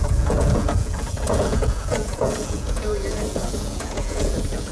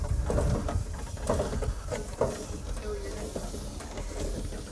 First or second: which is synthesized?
first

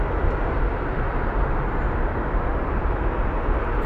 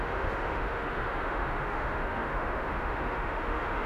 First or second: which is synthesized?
second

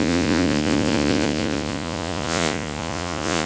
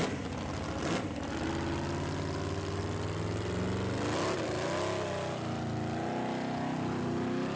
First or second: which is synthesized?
first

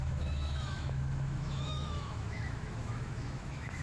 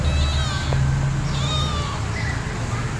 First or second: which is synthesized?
first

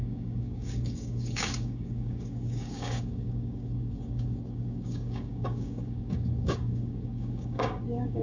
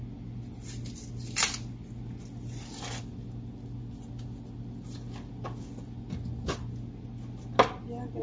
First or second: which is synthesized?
first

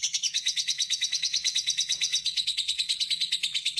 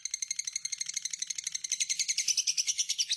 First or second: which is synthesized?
first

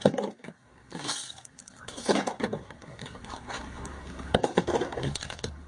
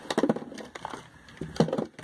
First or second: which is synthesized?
first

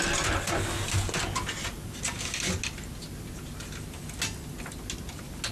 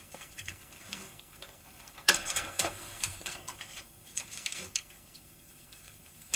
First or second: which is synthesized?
second